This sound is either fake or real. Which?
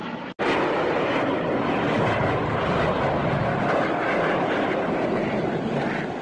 real